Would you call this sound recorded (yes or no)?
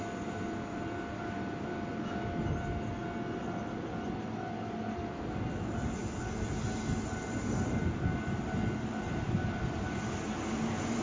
yes